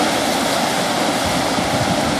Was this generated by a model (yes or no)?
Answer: no